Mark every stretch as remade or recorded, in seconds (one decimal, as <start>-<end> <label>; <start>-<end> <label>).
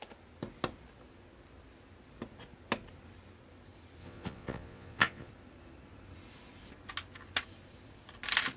0.0-4.0 recorded; 4.0-5.3 remade; 5.3-8.6 recorded